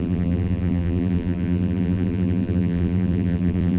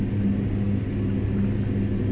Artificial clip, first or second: first